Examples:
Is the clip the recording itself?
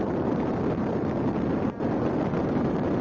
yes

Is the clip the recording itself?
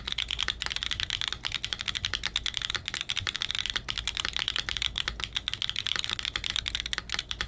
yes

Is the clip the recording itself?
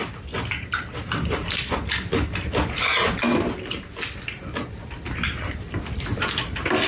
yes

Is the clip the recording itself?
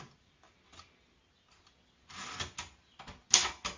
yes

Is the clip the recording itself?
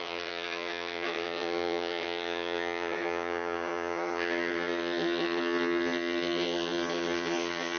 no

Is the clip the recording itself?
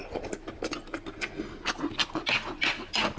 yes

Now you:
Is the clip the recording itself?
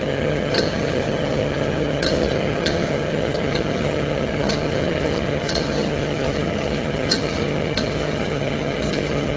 no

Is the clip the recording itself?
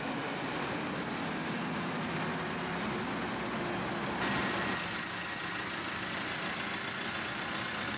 yes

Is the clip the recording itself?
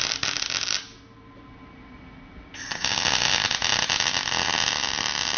yes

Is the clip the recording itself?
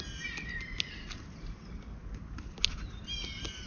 yes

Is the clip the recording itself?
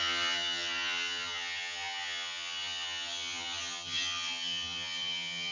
no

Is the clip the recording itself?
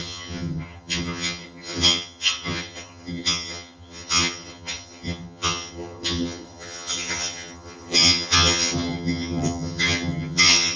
no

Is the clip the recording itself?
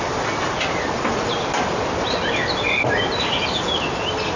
yes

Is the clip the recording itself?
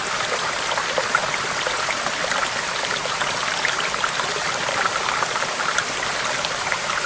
yes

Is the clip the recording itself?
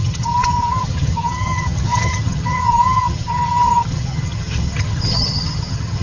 no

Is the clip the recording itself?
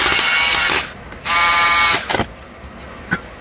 yes